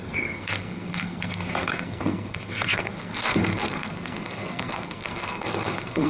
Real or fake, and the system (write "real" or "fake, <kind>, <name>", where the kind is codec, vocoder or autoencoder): fake, codec, SNAC